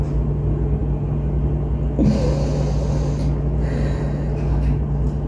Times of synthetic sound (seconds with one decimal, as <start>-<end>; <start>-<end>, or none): none